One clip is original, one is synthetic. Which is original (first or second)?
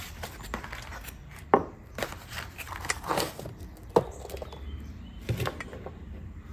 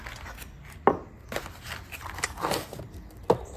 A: second